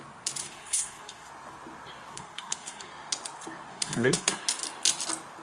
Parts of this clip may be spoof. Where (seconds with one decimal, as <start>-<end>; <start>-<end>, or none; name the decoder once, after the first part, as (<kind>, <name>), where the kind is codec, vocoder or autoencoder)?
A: 0.4-1.3 (codec, SNAC); 2.1-2.9; 3.7-4.4